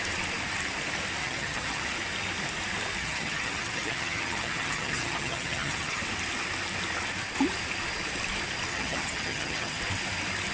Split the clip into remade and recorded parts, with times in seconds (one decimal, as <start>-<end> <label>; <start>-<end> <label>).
0.0-1.2 recorded; 1.2-1.8 remade; 1.8-3.0 recorded; 3.0-6.0 remade; 6.0-8.7 recorded; 8.7-9.8 remade; 9.8-10.5 recorded